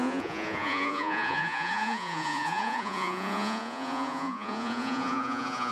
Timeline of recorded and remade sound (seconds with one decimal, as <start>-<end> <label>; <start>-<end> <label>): 0.0-5.7 remade